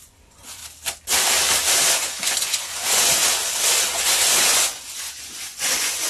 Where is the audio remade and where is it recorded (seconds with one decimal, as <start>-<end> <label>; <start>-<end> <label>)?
0.0-0.6 remade; 0.6-1.9 recorded; 1.9-3.2 remade; 3.2-3.7 recorded; 3.7-6.1 remade